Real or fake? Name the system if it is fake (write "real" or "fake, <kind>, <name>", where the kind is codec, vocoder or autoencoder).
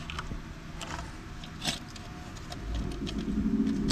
real